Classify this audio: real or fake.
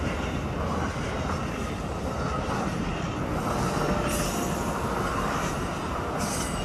real